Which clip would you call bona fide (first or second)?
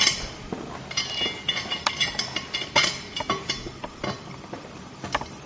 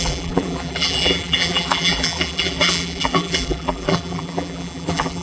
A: first